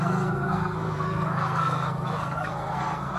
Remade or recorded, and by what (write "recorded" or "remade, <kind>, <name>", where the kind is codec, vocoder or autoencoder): remade, codec, SNAC